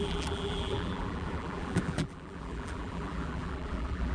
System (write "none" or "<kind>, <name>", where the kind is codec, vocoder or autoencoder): vocoder, BigVGAN v2